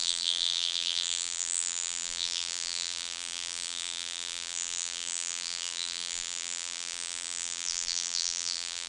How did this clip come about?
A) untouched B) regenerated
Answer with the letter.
B